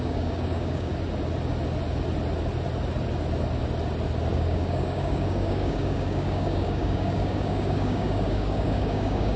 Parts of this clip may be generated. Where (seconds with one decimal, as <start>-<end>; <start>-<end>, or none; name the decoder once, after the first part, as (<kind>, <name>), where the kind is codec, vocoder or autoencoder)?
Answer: 0.0-0.9 (codec, DAC); 4.3-9.4